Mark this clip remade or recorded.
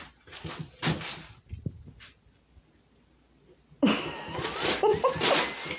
recorded